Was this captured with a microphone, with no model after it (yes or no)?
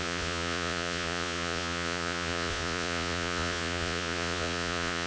no